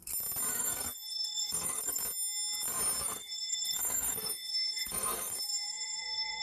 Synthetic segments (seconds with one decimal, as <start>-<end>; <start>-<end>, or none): 0.5-2.0; 3.0-6.4